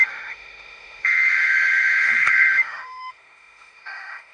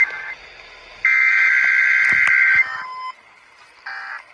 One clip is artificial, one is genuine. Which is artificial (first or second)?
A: first